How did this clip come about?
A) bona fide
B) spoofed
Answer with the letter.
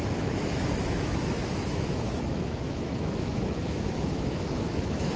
B